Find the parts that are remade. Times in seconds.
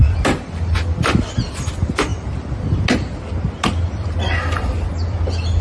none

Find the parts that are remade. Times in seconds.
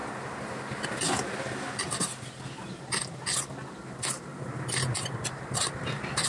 0.0-2.7; 4.3-6.3